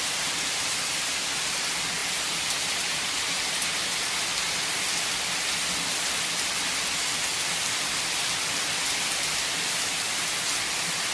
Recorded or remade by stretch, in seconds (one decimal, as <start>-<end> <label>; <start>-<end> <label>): 0.0-11.1 recorded